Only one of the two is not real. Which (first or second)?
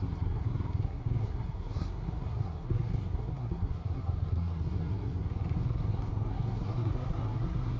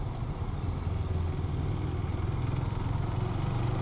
first